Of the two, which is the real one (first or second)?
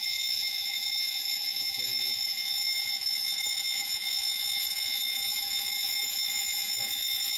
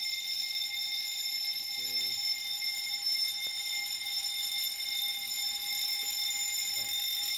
second